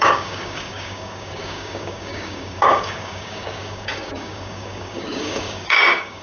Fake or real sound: fake